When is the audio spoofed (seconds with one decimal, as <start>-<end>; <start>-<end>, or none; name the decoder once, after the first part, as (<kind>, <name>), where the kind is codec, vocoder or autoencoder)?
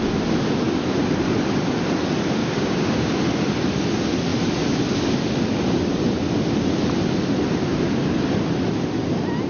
2.4-3.1 (codec, DAC)